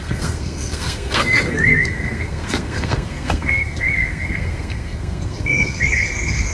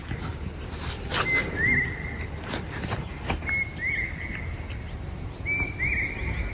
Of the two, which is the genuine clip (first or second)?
second